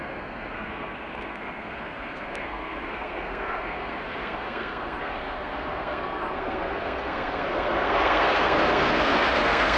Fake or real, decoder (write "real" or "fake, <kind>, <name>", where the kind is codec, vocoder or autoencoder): fake, codec, SNAC